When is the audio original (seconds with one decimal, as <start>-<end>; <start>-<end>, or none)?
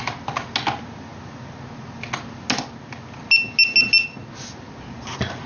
0.0-5.5